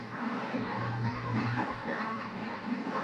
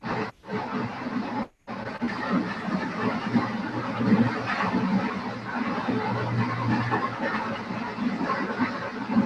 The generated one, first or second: first